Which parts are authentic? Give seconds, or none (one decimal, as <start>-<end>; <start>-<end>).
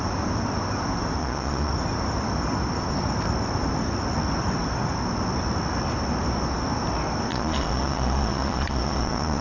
0.0-1.2; 1.7-7.3